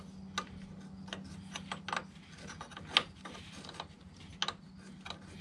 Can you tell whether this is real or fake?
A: real